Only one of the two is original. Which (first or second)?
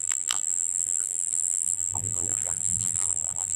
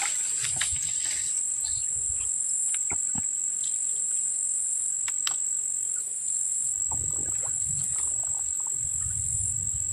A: second